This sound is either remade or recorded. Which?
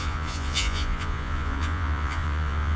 remade